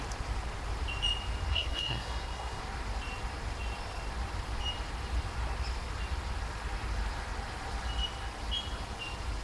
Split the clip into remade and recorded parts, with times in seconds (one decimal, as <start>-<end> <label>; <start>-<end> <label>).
0.0-1.5 recorded; 1.5-2.6 remade; 2.6-9.4 recorded